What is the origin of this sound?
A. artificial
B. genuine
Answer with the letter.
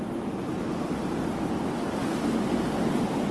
B